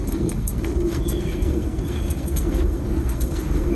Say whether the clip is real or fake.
fake